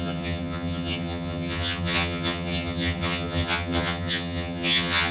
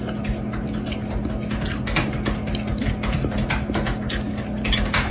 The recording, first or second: second